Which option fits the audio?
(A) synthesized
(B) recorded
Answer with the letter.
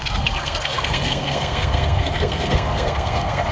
A